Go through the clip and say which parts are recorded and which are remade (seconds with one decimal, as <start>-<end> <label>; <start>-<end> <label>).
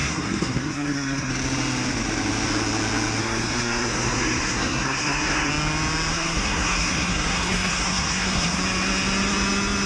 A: 0.0-1.3 remade; 1.3-3.2 recorded; 3.2-5.5 remade; 5.5-6.1 recorded; 6.1-8.6 remade; 8.6-9.9 recorded